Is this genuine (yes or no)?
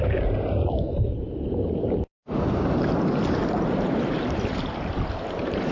no